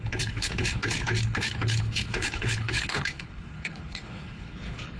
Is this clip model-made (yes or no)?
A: yes